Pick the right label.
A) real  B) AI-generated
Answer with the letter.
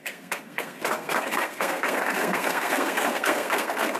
B